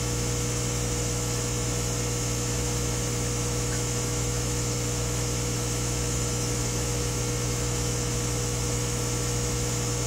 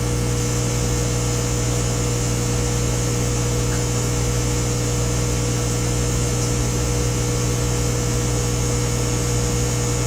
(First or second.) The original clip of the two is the second